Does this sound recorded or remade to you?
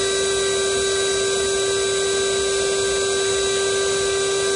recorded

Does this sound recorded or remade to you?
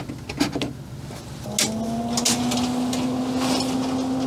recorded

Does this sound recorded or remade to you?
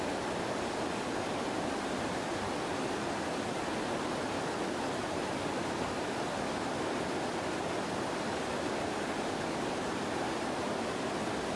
recorded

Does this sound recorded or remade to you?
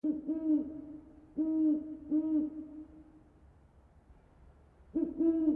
recorded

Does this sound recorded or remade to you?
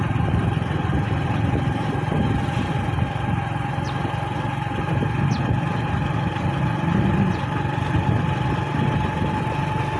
recorded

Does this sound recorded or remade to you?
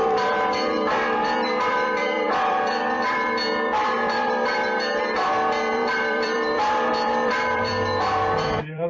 remade